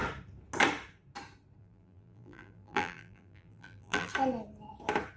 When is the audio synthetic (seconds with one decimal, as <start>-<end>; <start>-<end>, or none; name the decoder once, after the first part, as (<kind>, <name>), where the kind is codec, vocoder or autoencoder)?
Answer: 1.6-4.1 (vocoder, BigVGAN v2)